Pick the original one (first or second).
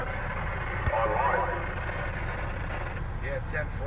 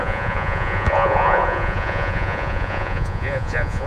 first